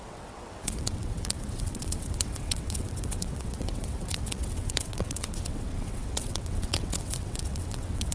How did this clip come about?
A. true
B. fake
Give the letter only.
B